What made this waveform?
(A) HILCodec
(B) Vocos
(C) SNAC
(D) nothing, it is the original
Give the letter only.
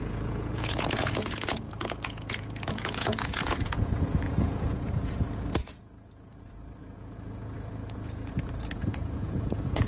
B